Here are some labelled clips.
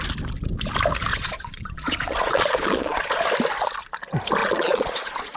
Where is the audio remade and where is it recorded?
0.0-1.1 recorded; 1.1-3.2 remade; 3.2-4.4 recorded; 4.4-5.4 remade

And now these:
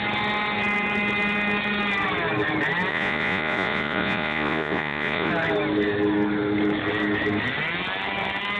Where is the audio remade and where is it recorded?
0.0-2.9 recorded; 2.9-5.3 remade; 5.3-8.6 recorded

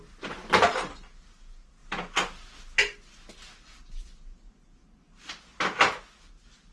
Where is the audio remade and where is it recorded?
0.0-6.7 recorded

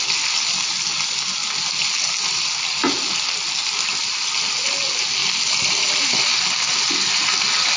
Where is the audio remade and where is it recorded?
0.0-7.8 recorded

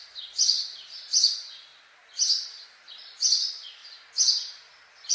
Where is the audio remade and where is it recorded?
0.0-1.7 remade; 1.7-2.9 recorded; 2.9-3.8 remade; 3.8-5.1 recorded